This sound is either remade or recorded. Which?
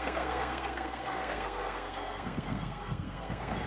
remade